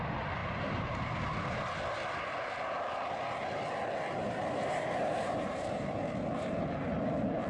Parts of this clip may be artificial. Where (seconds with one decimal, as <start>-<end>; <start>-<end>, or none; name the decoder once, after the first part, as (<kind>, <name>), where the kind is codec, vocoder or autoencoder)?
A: 0.4-1.0 (vocoder, BigVGAN v2); 4.2-6.9